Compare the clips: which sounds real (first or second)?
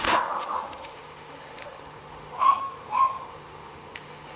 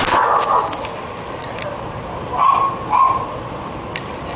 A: second